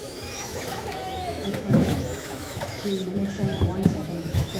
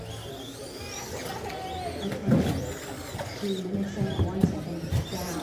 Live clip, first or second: second